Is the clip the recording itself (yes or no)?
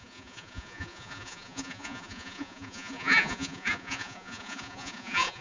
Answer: no